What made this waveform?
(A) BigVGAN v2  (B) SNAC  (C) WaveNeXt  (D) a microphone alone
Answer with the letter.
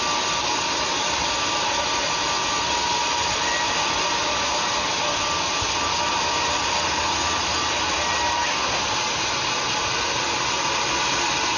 D